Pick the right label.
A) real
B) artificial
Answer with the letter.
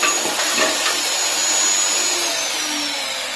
A